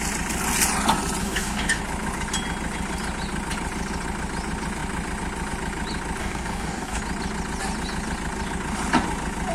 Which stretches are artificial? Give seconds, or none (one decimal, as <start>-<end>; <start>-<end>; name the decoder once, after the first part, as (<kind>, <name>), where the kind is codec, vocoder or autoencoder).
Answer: 1.2-1.8 (codec, DAC); 6.2-7.0